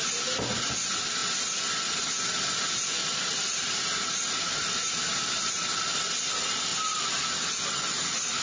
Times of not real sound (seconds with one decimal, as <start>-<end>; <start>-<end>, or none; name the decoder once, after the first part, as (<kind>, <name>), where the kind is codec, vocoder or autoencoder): 3.0-5.5 (vocoder, BigVGAN v2)